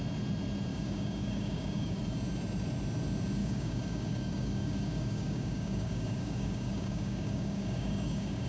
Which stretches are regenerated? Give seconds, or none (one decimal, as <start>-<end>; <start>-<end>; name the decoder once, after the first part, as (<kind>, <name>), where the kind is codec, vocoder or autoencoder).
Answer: 0.7-2.0 (codec, DAC); 3.4-8.5

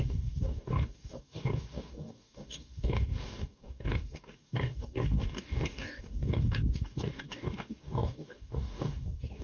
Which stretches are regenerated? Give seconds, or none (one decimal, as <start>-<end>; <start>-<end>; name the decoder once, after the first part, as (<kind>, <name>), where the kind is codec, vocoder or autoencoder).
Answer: 0.0-9.4 (codec, DAC)

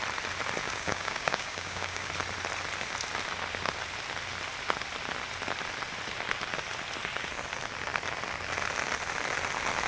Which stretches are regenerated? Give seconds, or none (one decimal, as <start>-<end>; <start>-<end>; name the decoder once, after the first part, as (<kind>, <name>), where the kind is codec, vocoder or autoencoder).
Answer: 0.6-2.1 (codec, DAC)

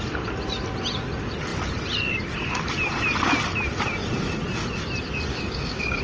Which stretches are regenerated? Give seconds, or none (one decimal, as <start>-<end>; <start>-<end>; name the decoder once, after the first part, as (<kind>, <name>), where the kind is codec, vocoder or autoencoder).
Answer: 5.3-6.0 (codec, DAC)

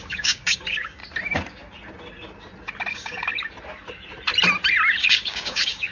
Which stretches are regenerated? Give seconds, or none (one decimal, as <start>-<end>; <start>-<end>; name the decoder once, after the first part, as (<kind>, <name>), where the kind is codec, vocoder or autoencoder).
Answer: 0.0-1.0 (codec, DAC); 2.9-3.3; 5.0-5.9

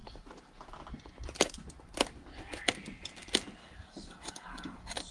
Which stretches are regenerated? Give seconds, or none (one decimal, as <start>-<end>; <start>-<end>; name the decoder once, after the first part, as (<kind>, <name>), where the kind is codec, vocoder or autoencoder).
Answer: 3.6-5.1 (codec, DAC)